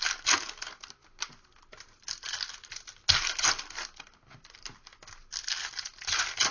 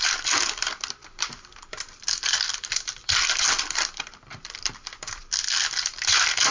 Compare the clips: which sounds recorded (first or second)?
first